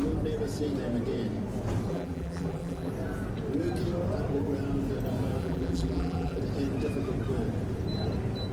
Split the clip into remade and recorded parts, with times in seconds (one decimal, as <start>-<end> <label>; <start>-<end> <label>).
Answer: 0.0-1.9 recorded; 1.9-2.9 remade; 2.9-5.4 recorded; 5.4-6.4 remade; 6.4-8.5 recorded